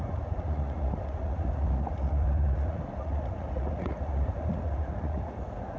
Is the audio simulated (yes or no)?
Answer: yes